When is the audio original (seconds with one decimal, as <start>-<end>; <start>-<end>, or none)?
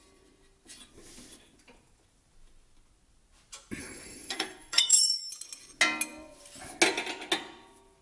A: 0.0-3.8; 5.2-8.0